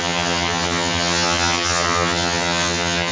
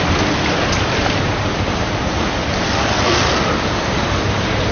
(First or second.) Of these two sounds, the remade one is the first